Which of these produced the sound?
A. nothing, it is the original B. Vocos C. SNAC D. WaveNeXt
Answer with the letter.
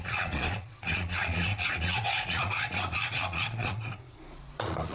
B